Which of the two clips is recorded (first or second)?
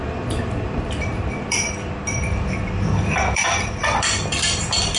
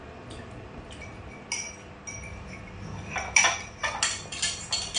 second